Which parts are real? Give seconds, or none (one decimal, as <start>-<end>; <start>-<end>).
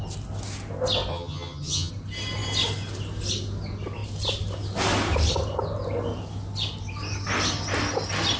0.0-1.1; 1.9-8.4